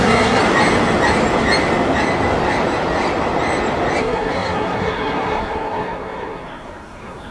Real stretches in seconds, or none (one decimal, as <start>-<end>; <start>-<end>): 0.4-4.0